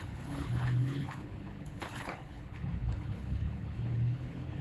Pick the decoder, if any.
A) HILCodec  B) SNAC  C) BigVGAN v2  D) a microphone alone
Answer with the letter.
A